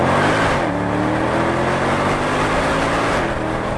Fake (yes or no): no